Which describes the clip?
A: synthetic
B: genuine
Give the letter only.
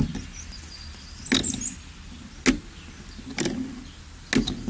B